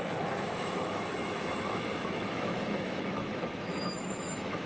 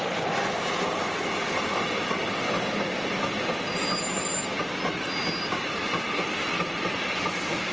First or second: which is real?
second